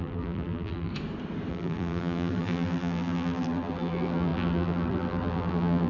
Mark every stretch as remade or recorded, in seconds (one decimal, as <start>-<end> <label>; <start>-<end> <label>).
0.0-0.9 remade; 0.9-1.5 recorded; 1.5-5.9 remade